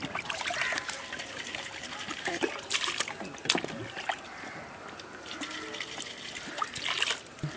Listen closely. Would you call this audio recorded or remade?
recorded